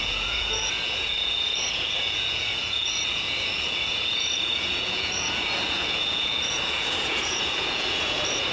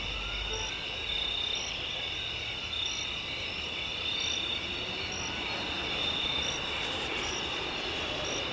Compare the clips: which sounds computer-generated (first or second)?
first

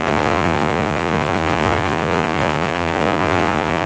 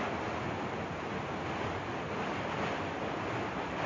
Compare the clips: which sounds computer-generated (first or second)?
first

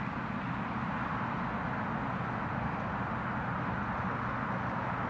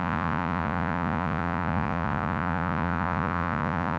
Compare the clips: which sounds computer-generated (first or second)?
second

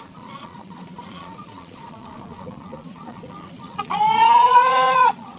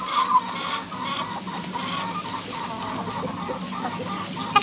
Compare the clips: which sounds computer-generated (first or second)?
first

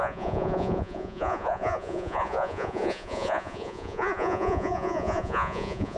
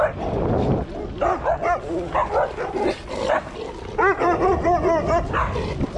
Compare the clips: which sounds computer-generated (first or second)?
first